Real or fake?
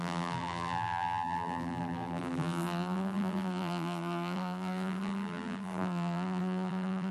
fake